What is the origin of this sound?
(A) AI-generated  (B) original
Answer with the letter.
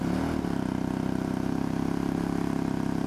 B